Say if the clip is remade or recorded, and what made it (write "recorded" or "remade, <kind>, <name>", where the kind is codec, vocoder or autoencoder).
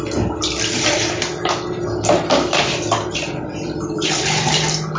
recorded